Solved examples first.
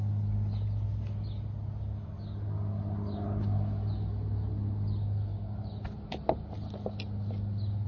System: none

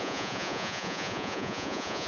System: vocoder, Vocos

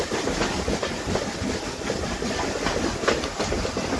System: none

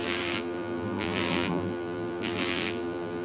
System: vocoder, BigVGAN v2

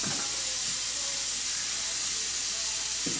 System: none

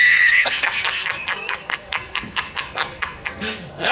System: codec, SNAC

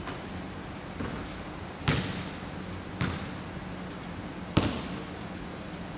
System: none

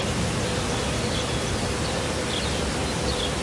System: none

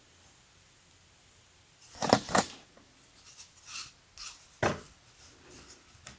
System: none